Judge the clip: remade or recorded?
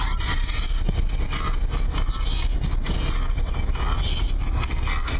recorded